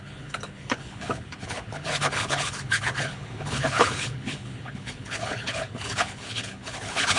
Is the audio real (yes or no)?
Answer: no